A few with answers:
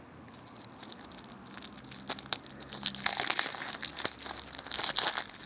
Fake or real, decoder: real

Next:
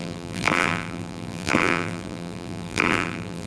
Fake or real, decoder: fake, vocoder, BigVGAN v2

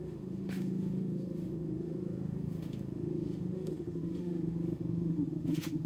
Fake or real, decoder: fake, autoencoder, DAC-VAE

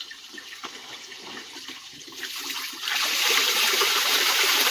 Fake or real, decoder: fake, vocoder, BigVGAN v2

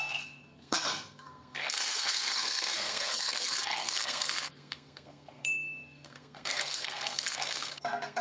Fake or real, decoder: fake, codec, SNAC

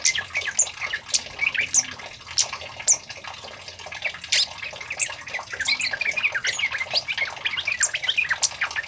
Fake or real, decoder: real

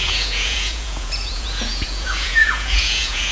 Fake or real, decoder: fake, vocoder, Vocos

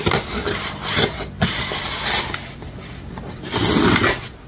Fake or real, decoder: real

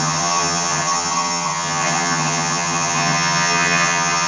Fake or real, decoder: fake, vocoder, HiFi-GAN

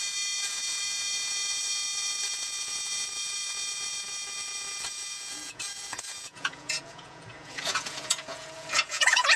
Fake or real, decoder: fake, vocoder, Vocos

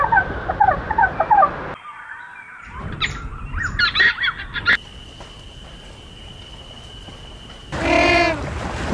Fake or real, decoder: real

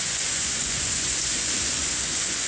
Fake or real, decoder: fake, vocoder, Vocos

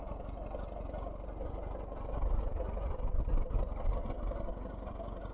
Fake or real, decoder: real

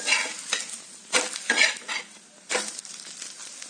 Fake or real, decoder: real